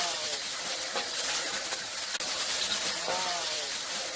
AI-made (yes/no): no